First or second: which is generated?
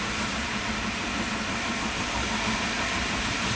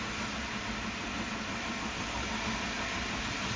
first